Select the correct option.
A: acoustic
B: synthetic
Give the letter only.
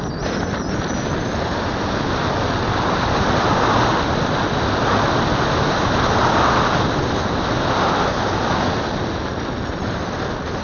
A